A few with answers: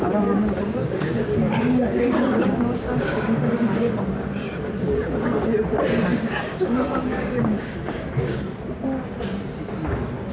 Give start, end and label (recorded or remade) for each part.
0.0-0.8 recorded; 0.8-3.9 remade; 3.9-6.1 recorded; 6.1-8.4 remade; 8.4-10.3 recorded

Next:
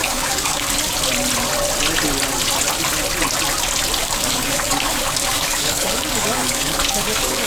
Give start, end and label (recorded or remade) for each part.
0.0-0.7 remade; 0.7-4.0 recorded; 4.0-7.5 remade

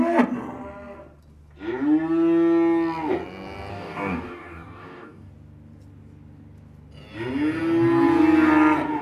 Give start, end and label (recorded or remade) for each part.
0.0-3.7 recorded; 3.7-5.3 remade; 5.3-9.0 recorded

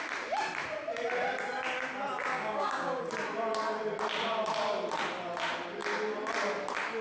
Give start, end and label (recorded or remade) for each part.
0.0-2.3 recorded; 2.3-3.0 remade; 3.0-7.0 recorded

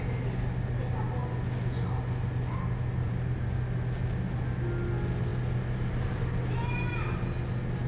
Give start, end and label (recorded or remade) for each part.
0.0-7.9 recorded

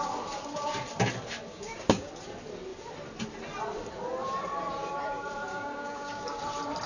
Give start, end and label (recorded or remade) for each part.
0.0-1.5 recorded; 1.5-2.1 remade; 2.1-5.5 recorded; 5.5-6.4 remade; 6.4-6.9 recorded